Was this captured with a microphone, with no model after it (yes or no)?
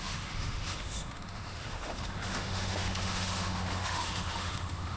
no